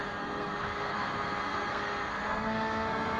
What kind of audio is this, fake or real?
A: fake